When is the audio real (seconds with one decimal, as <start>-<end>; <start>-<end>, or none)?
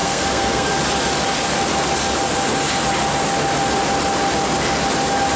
0.7-5.4